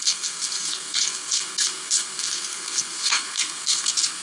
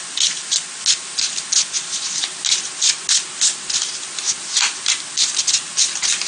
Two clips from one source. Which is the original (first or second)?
second